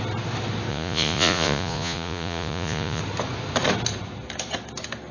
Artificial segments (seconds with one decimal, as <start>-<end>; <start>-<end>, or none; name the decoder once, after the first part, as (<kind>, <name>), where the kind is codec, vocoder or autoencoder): 0.7-3.0 (vocoder, Vocos)